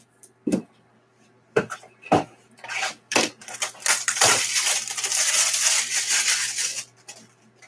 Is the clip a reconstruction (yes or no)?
yes